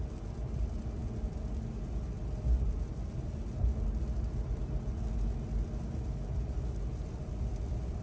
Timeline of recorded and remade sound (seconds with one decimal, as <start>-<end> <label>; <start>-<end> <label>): 0.0-8.0 recorded

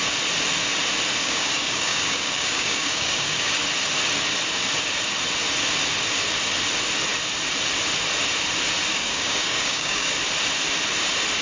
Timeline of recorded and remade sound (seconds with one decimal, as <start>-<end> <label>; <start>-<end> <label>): 0.0-1.2 recorded; 1.2-3.6 remade; 3.6-8.9 recorded; 8.9-10.2 remade; 10.2-11.4 recorded

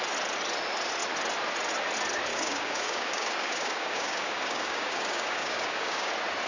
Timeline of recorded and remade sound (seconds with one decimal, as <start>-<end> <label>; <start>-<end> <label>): 0.0-2.3 recorded; 2.3-6.1 remade; 6.1-6.5 recorded

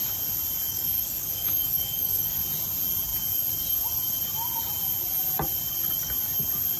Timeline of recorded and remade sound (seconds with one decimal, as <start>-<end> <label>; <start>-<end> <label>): 0.0-0.7 recorded; 0.7-2.4 remade; 2.4-6.8 recorded

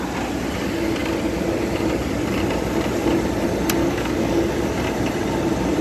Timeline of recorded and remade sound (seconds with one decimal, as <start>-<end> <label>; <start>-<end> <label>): 0.0-3.8 recorded; 3.8-4.7 remade; 4.7-5.8 recorded

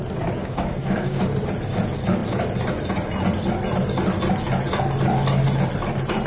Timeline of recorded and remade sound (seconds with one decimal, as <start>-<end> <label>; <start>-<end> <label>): 0.0-0.4 recorded; 0.4-1.2 remade; 1.2-6.3 recorded

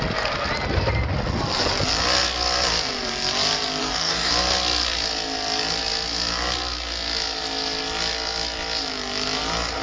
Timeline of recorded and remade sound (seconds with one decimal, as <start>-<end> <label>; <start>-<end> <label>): 0.0-3.8 recorded; 3.8-4.3 remade; 4.3-9.8 recorded